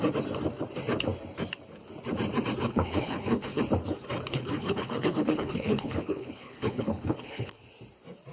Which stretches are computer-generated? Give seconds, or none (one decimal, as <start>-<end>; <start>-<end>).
2.6-3.6; 4.3-7.6